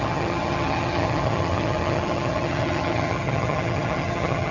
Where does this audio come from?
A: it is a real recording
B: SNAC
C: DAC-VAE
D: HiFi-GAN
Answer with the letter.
D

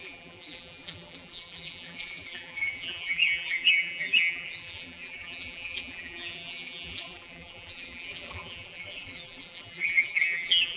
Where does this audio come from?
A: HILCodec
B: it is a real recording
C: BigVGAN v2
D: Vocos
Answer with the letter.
C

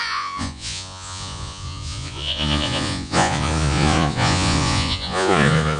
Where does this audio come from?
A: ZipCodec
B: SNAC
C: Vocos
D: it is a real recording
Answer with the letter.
C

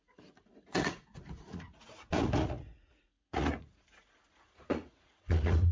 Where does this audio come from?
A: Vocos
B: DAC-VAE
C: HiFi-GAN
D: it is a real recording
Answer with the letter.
A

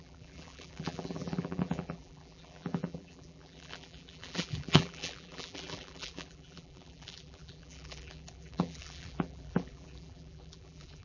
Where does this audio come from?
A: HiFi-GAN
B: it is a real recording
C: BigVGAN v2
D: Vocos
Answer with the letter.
C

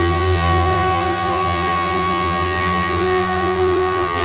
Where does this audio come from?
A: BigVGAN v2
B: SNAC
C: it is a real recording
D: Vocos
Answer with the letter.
A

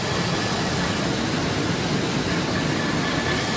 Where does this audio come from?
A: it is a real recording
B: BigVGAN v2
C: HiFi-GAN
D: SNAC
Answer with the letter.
A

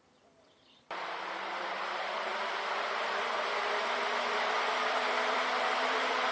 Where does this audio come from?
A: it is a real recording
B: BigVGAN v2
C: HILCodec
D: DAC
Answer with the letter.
B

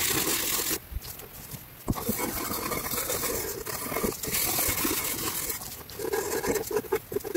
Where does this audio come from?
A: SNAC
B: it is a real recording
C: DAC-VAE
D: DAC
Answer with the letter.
B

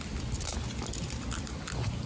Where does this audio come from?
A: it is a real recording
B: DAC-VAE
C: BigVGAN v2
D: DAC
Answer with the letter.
A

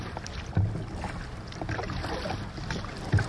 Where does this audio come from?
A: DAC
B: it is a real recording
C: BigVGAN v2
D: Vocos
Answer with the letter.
B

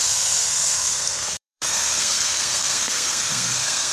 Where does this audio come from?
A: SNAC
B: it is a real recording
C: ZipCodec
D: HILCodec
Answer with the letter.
A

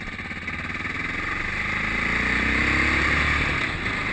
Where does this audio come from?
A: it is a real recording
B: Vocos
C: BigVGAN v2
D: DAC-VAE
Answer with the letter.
A